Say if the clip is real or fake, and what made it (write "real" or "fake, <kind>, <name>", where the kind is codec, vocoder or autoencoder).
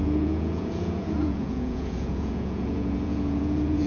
fake, vocoder, Vocos